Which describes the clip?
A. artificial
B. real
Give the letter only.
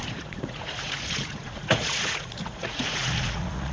A